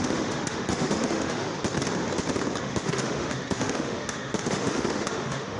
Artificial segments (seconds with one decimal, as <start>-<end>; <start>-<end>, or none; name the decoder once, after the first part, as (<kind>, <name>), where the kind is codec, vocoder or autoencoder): 0.0-1.5 (autoencoder, DAC-VAE); 2.6-5.6